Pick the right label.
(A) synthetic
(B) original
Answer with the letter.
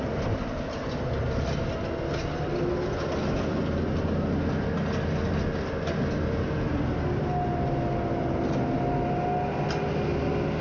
B